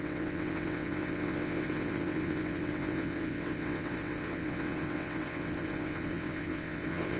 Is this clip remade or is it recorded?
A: remade